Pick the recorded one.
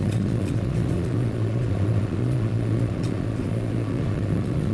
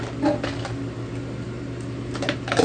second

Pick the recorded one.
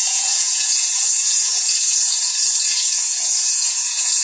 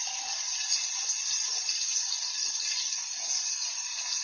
second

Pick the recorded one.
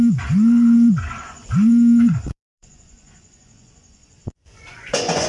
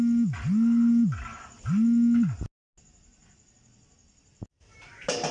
second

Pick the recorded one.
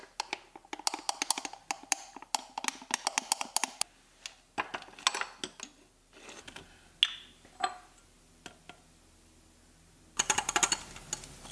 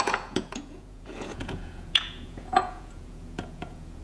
first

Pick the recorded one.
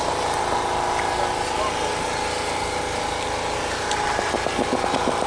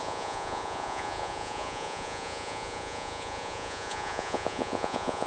first